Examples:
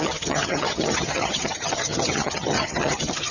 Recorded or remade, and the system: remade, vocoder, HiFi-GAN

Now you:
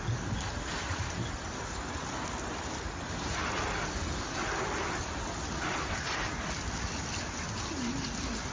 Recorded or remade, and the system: recorded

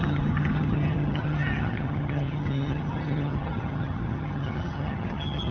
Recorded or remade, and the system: remade, vocoder, HiFi-GAN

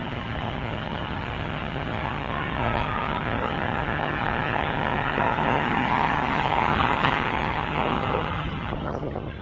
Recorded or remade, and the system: remade, vocoder, HiFi-GAN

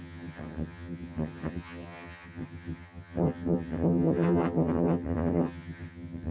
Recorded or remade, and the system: remade, vocoder, HiFi-GAN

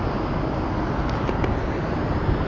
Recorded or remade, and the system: recorded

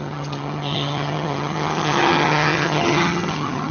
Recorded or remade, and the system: remade, vocoder, HiFi-GAN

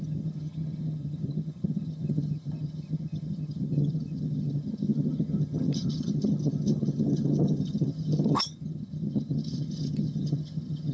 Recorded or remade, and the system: remade, vocoder, HiFi-GAN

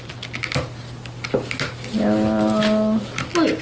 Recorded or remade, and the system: recorded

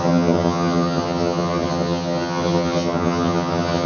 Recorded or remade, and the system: remade, vocoder, HiFi-GAN